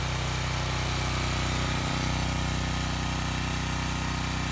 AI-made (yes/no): no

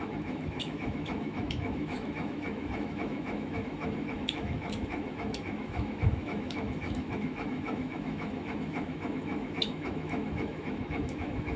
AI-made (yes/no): yes